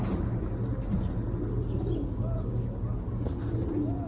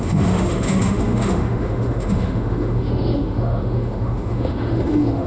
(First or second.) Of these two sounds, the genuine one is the first